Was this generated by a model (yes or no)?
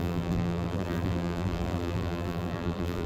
yes